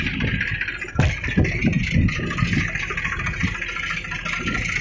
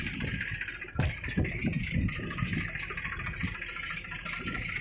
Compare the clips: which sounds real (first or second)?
first